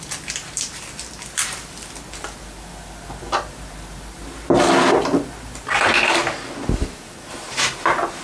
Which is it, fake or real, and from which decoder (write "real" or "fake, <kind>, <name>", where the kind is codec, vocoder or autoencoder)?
real